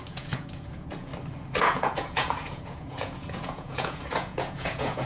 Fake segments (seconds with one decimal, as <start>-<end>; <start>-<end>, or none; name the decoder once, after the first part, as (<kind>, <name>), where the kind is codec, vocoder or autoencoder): 0.0-1.1 (vocoder, Vocos); 1.6-5.1

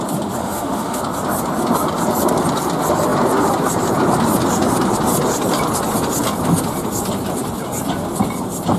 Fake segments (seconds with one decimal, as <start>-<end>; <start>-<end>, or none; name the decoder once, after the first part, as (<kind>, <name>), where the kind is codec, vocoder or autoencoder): 0.4-1.0 (autoencoder, DAC-VAE)

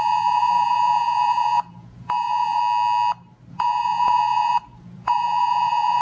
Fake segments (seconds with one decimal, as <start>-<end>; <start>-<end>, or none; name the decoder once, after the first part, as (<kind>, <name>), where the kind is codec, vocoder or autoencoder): 0.0-2.6 (vocoder, Vocos); 3.5-6.0

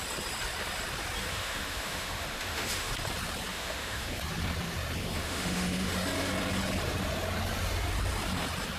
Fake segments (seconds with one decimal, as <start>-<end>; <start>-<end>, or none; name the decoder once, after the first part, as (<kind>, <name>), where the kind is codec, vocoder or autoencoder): 1.3-2.9 (autoencoder, DAC-VAE); 3.5-4.2; 5.0-5.9

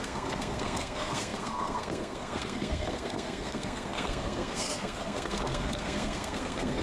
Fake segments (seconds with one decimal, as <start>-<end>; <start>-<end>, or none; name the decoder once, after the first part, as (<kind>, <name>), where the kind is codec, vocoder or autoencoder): 0.0-6.8 (codec, SNAC)

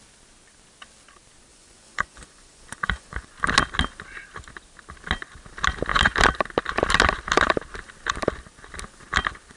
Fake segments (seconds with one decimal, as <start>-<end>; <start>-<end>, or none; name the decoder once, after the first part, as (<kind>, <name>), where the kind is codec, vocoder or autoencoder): 1.5-3.3 (vocoder, Vocos)

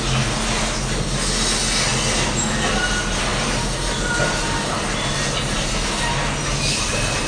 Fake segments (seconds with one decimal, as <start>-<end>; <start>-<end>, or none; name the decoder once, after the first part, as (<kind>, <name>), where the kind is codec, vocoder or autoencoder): none